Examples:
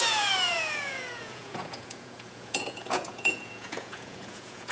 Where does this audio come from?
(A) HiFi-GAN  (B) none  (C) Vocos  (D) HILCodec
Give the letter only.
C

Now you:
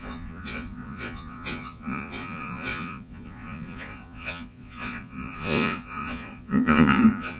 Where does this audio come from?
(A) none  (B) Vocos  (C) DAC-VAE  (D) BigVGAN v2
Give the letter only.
B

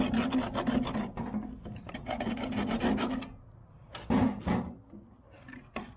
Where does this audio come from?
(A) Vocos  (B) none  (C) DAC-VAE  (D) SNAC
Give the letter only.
B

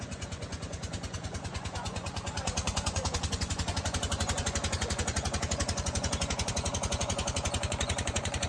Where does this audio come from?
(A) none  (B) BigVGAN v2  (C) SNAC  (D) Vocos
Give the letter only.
D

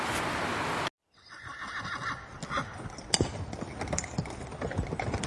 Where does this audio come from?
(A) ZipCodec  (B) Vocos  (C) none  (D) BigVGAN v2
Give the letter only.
C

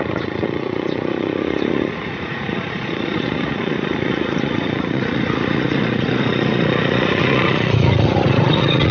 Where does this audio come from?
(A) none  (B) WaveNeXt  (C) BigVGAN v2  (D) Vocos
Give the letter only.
D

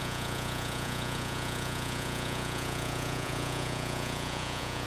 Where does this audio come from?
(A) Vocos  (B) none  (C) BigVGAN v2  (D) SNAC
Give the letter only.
A